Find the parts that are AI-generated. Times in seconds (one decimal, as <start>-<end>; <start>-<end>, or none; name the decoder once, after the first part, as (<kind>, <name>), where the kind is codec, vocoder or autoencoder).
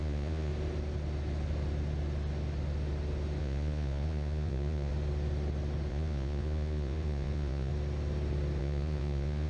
0.0-0.5 (vocoder, Vocos); 3.4-4.9; 5.9-7.7; 8.6-9.5